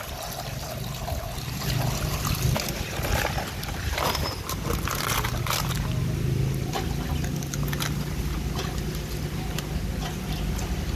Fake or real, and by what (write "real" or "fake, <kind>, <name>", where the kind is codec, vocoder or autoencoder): real